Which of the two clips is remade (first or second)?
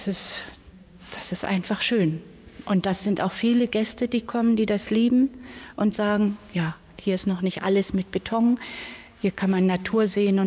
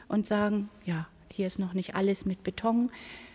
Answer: first